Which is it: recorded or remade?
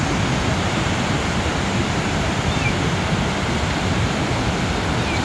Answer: recorded